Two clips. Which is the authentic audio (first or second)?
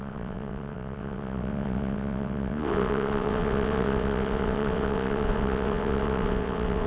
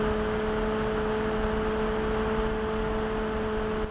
second